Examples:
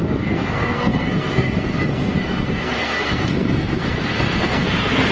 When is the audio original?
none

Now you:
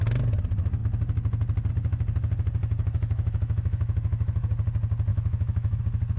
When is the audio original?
0.0-2.6; 4.5-5.1; 5.8-6.2

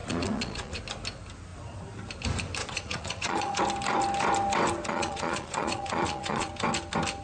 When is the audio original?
0.8-2.6; 3.6-4.9; 6.5-7.2